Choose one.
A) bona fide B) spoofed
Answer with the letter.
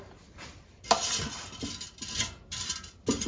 A